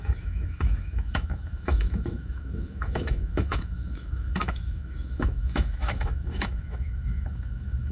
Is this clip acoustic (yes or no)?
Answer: no